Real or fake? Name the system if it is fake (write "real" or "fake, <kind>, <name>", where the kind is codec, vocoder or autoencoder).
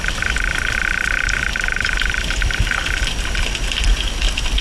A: fake, vocoder, BigVGAN v2